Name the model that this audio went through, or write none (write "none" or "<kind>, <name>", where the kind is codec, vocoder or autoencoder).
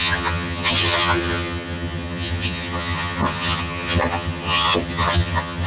vocoder, HiFi-GAN